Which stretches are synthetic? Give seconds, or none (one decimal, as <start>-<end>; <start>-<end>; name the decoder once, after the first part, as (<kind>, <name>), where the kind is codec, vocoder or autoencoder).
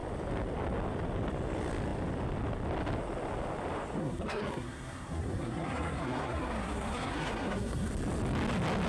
4.0-7.9 (codec, SNAC)